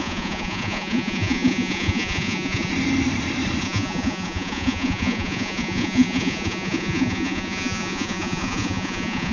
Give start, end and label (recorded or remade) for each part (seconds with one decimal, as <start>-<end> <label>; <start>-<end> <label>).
0.0-2.7 remade; 2.7-3.6 recorded; 3.6-9.3 remade